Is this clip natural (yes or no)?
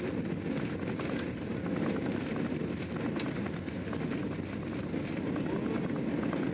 yes